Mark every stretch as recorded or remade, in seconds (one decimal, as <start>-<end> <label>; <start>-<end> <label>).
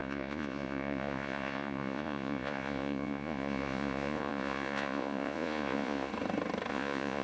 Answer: 0.0-6.1 remade; 6.1-6.7 recorded; 6.7-7.2 remade